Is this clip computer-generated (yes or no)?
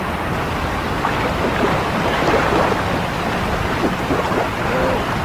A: no